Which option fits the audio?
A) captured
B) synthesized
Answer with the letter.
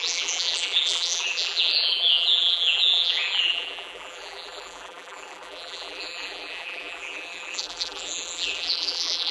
B